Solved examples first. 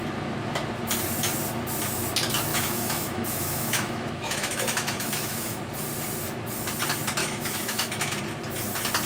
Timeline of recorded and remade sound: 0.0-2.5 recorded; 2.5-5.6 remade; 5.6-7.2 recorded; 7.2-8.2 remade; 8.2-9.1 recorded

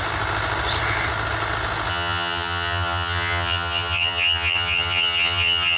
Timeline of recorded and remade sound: 0.0-1.9 recorded; 1.9-5.8 remade

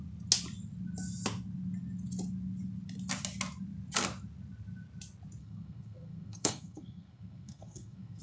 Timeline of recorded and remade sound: 0.0-5.4 recorded; 5.4-8.2 remade

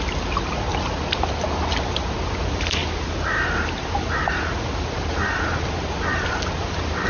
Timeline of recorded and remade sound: 0.0-7.1 recorded

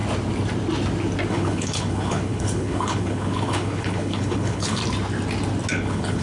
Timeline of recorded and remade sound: 0.0-1.3 recorded; 1.3-4.8 remade; 4.8-5.7 recorded; 5.7-6.2 remade

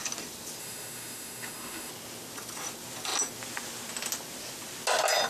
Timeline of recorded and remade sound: 0.0-0.6 recorded; 0.6-1.9 remade; 1.9-5.3 recorded

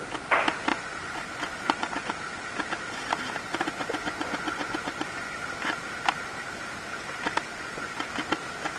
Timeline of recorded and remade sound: 0.0-0.7 recorded; 0.7-2.1 remade; 2.1-3.5 recorded; 3.5-5.4 remade; 5.4-7.5 recorded; 7.5-8.1 remade; 8.1-8.8 recorded

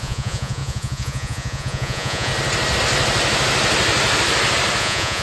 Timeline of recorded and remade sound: 0.0-2.3 remade; 2.3-4.8 recorded; 4.8-5.2 remade